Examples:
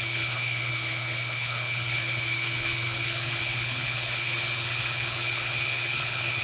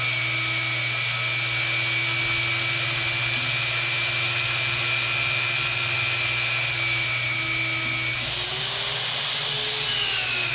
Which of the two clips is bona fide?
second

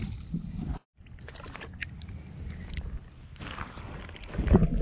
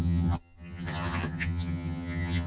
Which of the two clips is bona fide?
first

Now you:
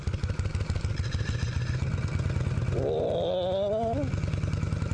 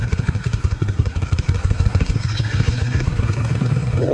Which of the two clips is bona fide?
first